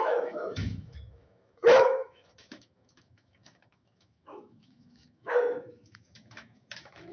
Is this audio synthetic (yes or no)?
yes